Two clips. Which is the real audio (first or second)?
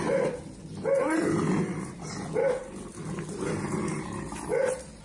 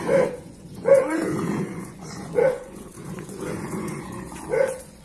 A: first